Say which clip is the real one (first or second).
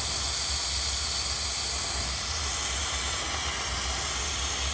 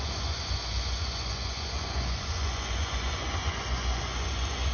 first